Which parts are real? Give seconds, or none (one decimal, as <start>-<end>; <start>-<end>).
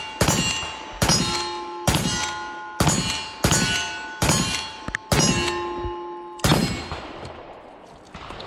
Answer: 0.0-8.5